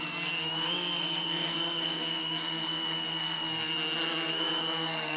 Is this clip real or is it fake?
fake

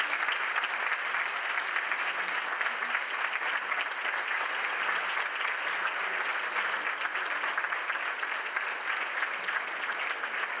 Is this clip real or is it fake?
real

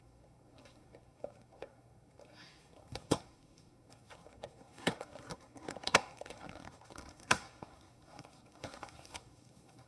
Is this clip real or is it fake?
fake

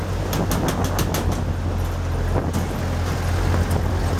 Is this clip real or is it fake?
real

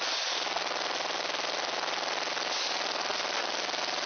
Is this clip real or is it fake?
real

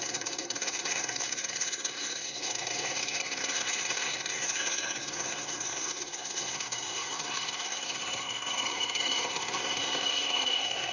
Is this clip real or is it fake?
fake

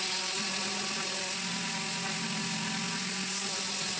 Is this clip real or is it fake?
real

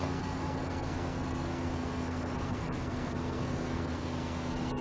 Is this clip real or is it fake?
fake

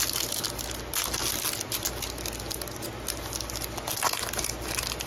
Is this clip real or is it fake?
real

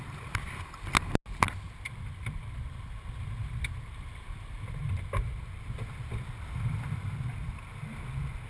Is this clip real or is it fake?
real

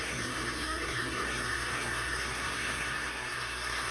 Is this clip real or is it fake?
fake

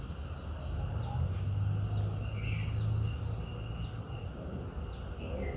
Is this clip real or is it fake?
real